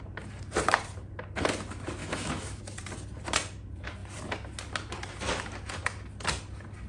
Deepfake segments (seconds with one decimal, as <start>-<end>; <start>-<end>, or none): 2.0-2.6